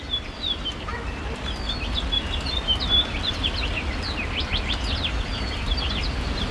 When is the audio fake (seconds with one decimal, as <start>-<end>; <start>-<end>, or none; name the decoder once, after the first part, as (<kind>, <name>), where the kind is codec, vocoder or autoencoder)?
0.0-0.9 (vocoder, BigVGAN v2); 3.9-6.5